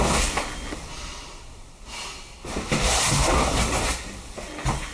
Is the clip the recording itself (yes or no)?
yes